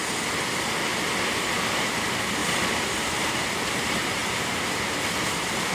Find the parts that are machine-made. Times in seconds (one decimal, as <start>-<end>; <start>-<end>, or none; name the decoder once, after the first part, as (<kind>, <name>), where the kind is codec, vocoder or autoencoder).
none